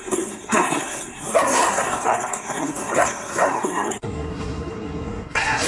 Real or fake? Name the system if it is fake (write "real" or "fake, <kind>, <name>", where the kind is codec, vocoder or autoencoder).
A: fake, codec, SNAC